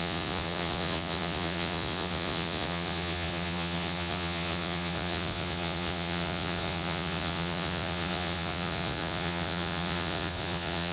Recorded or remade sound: remade